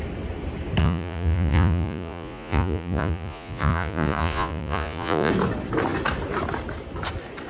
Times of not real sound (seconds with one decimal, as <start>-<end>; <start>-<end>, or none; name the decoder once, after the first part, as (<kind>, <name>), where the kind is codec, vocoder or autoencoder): 0.8-5.3 (vocoder, Vocos)